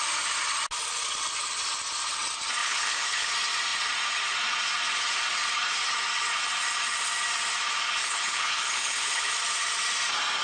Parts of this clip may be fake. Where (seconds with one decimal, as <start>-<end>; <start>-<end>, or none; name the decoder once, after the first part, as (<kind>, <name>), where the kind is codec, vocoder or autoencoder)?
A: 2.6-3.3 (codec, HILCodec); 8.0-9.3